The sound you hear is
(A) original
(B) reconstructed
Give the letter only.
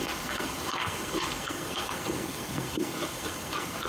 B